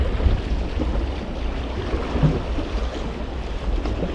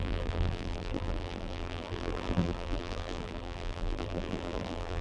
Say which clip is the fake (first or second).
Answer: second